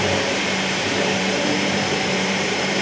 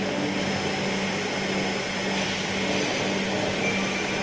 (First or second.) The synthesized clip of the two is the first